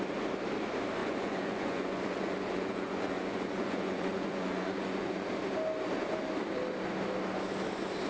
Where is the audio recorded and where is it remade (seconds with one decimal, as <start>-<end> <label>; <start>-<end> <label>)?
0.0-1.0 recorded; 1.0-5.3 remade; 5.3-8.1 recorded